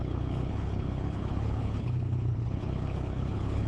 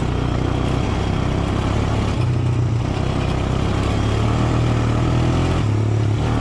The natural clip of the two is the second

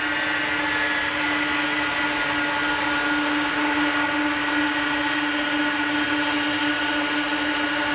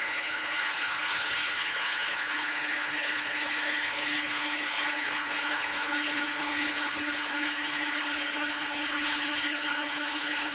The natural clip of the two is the first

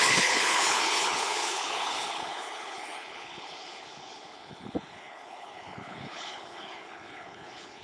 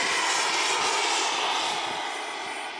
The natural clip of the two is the second